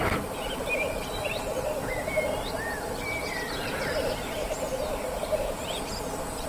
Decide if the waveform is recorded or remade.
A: recorded